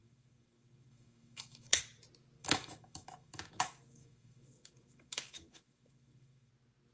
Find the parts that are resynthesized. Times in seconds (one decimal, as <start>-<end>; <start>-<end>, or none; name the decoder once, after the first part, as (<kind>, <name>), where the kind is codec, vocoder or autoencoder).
0.0-1.8 (autoencoder, DAC-VAE); 2.4-6.5